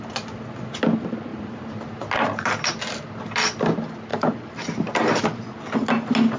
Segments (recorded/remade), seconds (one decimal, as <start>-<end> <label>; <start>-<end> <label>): 0.0-1.3 recorded; 1.3-1.9 remade; 1.9-4.1 recorded; 4.1-5.2 remade; 5.2-6.4 recorded